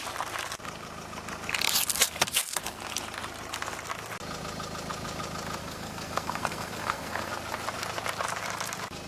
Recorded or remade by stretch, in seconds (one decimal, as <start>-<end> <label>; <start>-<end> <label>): 0.0-1.9 recorded; 1.9-2.8 remade; 2.8-5.6 recorded; 5.6-7.3 remade; 7.3-9.1 recorded